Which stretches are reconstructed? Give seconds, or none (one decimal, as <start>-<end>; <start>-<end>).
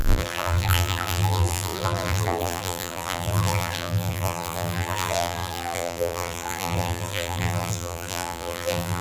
0.0-9.0